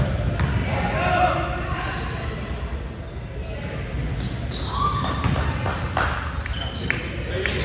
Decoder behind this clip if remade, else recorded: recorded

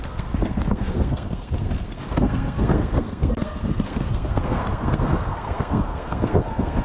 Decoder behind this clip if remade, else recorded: remade, codec, SNAC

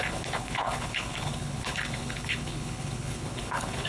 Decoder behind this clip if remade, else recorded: remade, codec, HILCodec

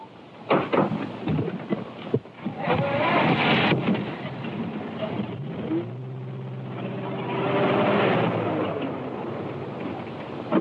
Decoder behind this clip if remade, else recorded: recorded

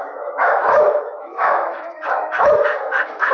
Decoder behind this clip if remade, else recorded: remade, autoencoder, DAC-VAE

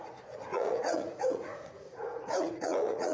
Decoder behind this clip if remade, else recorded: remade, vocoder, Vocos